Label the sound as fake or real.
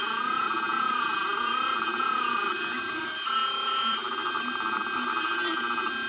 fake